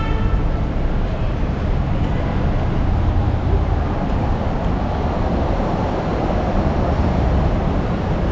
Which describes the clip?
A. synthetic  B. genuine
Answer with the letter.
B